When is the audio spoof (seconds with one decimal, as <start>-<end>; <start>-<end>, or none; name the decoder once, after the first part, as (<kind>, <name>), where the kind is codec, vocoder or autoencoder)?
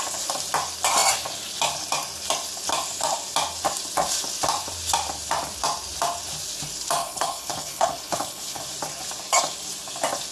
7.0-8.6 (codec, HILCodec)